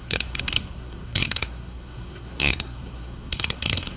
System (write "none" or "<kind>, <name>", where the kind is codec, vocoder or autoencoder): codec, SNAC